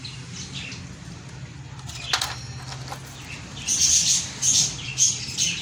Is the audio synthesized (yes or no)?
no